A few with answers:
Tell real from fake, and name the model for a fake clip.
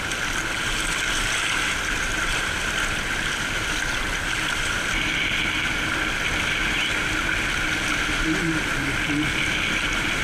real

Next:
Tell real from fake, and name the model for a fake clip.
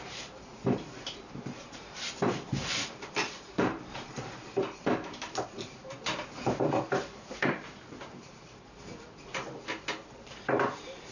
fake, vocoder, BigVGAN v2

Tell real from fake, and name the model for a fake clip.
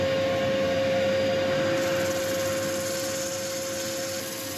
real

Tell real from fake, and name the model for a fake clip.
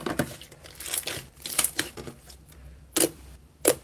fake, vocoder, BigVGAN v2